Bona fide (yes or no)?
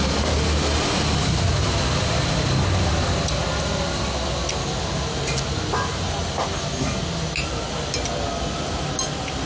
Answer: yes